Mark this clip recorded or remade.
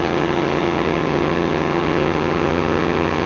remade